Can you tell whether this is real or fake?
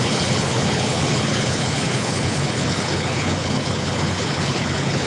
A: fake